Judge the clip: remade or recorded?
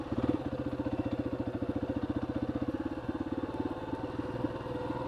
recorded